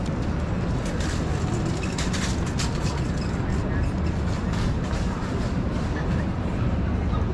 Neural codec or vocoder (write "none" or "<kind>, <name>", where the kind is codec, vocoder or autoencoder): none